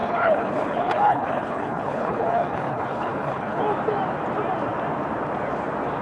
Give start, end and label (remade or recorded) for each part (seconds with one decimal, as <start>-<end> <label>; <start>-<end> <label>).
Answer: 0.0-3.6 remade; 3.6-6.0 recorded